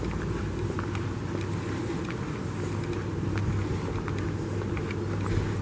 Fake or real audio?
real